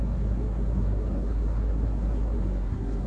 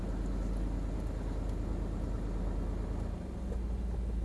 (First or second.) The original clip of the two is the second